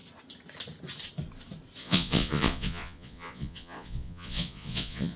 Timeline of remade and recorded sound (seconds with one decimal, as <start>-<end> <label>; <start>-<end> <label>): 0.0-1.8 recorded; 1.8-5.2 remade